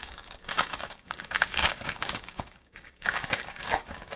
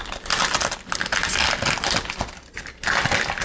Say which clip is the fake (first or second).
first